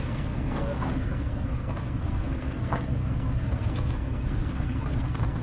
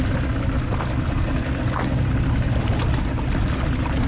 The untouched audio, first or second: second